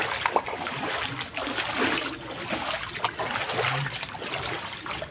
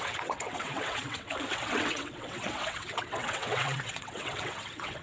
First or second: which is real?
first